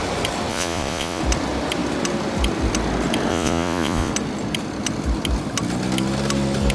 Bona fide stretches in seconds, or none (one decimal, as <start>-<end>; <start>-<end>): 0.0-0.5; 1.2-3.3; 4.1-6.7